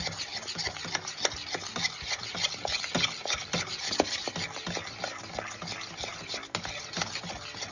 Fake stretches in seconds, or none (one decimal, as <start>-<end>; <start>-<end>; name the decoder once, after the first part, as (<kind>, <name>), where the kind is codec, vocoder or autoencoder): none